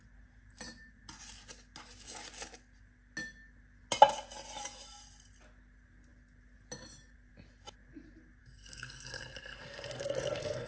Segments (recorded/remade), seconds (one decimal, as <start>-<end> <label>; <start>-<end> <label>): 0.0-8.4 recorded; 8.4-10.7 remade